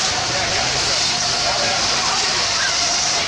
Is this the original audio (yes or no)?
yes